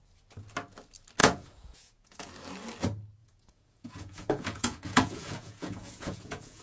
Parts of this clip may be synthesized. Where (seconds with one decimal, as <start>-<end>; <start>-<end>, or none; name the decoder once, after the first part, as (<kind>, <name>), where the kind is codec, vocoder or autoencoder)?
1.2-2.3 (vocoder, Vocos); 3.2-6.6